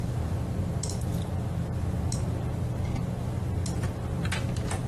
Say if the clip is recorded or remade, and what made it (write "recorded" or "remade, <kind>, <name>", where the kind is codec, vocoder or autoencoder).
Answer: recorded